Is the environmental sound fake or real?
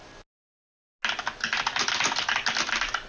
real